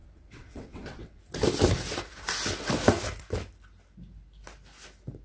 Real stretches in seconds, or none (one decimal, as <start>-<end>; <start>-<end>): 1.2-5.2